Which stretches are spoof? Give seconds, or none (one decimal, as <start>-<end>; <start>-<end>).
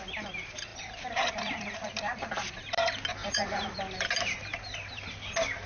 3.2-3.8